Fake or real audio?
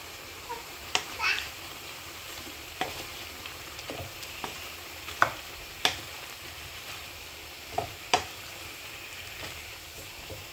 fake